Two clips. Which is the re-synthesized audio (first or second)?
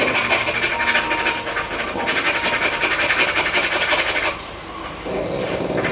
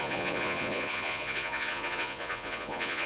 second